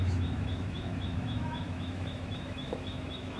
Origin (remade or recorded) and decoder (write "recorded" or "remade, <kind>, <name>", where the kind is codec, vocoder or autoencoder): remade, autoencoder, DAC-VAE